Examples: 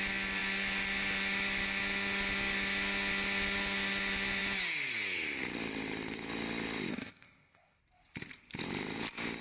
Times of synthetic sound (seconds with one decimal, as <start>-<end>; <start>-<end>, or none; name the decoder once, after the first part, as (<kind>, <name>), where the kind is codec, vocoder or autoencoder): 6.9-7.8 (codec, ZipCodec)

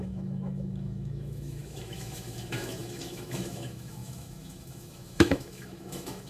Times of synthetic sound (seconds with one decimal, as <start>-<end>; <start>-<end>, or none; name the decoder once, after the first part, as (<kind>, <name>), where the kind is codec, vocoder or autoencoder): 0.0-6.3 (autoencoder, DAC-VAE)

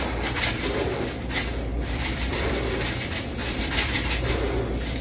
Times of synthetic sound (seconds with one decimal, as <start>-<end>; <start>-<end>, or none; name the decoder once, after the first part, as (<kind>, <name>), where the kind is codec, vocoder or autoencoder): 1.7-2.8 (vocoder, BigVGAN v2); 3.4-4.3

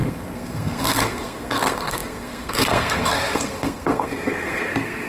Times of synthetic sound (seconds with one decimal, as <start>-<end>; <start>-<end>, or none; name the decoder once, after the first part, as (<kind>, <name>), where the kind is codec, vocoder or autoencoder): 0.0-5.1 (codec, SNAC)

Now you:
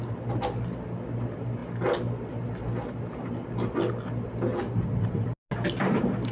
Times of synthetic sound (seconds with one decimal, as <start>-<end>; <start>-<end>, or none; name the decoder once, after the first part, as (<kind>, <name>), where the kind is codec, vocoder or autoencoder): none

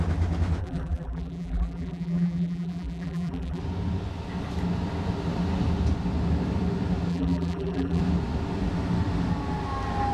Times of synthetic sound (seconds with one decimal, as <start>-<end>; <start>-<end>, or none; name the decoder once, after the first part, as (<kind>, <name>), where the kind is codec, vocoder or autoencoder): 0.6-3.6 (vocoder, BigVGAN v2); 7.1-8.0